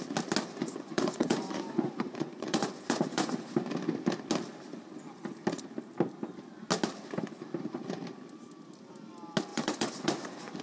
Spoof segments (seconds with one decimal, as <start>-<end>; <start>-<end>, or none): 0.6-3.3; 9.5-10.6